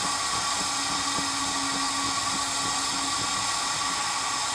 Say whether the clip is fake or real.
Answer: real